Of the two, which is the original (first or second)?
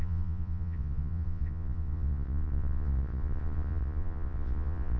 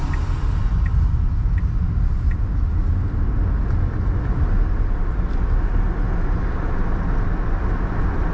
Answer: second